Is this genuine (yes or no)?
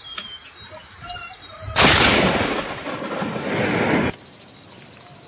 yes